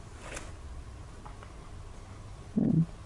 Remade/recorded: recorded